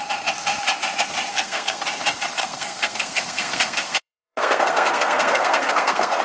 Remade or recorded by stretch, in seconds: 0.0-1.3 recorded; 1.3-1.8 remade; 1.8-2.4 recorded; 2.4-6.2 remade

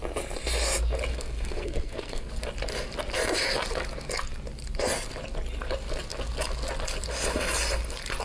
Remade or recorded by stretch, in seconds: 0.0-1.1 recorded; 1.1-2.3 remade; 2.3-8.2 recorded

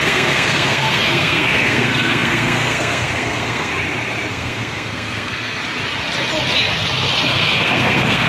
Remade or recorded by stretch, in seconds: 0.0-3.7 remade; 3.7-4.3 recorded; 4.3-5.6 remade; 5.6-7.3 recorded; 7.3-8.3 remade

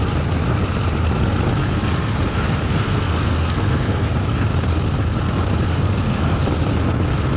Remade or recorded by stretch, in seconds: 0.0-2.3 recorded; 2.3-4.2 remade; 4.2-5.7 recorded; 5.7-6.4 remade; 6.4-7.4 recorded